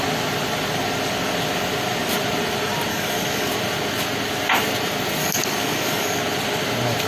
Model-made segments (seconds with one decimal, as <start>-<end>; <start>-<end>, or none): 2.9-3.5; 5.2-6.2